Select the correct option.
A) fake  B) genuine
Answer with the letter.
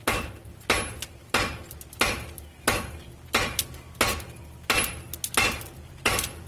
B